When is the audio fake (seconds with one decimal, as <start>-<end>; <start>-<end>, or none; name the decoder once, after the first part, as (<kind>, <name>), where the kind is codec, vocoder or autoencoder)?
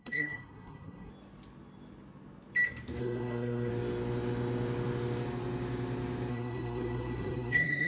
0.0-1.1 (codec, SNAC); 3.0-3.7; 6.3-7.9